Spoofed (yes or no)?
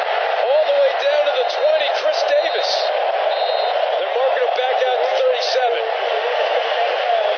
no